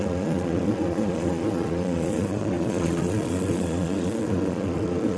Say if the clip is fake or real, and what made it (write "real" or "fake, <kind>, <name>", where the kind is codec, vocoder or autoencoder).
fake, vocoder, Vocos